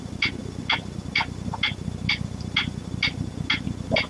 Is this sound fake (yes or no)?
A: no